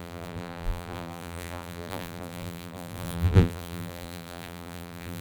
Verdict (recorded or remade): remade